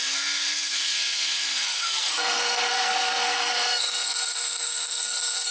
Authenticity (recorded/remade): remade